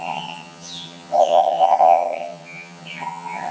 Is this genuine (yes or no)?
no